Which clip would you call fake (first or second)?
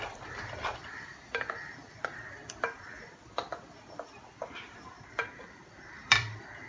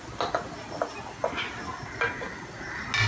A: first